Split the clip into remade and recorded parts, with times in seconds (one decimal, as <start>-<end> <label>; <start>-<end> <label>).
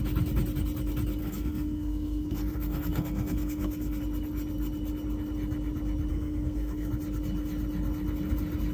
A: 0.0-1.2 recorded; 1.2-4.0 remade; 4.0-6.1 recorded; 6.1-6.9 remade; 6.9-8.7 recorded